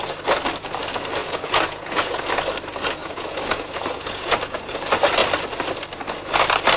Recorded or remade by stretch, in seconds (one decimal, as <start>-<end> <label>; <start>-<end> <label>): 0.0-1.2 recorded; 1.2-2.2 remade; 2.2-3.0 recorded; 3.0-4.8 remade; 4.8-6.8 recorded